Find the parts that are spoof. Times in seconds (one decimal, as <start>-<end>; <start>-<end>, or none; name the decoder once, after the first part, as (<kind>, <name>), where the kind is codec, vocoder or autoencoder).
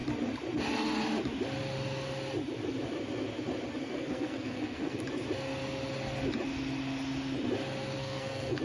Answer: 3.8-5.0 (codec, SNAC); 8.0-8.6